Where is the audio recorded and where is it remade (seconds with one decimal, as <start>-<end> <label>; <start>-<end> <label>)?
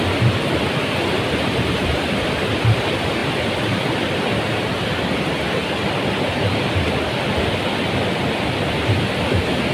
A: 0.0-3.2 remade; 3.2-8.0 recorded; 8.0-9.7 remade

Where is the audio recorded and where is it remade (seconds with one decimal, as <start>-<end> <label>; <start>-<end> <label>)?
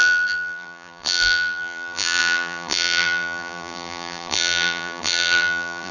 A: 0.0-5.9 remade